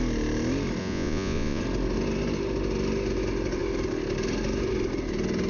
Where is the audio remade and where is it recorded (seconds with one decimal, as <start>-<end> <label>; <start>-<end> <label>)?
0.0-0.8 recorded; 0.8-1.6 remade; 1.6-5.5 recorded